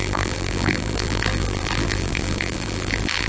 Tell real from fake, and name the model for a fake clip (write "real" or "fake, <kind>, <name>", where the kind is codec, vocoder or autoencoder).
fake, vocoder, BigVGAN v2